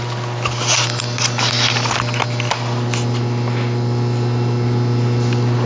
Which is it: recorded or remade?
recorded